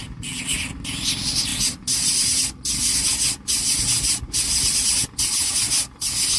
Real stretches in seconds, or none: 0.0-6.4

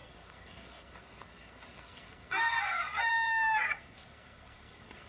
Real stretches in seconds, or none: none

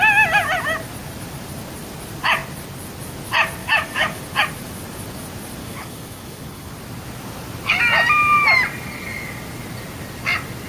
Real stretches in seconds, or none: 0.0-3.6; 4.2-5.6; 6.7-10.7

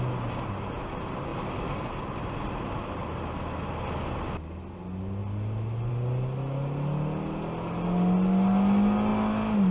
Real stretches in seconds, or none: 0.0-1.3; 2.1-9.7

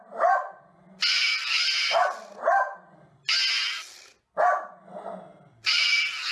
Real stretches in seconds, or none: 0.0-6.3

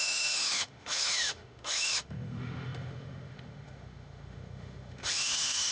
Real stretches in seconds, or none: none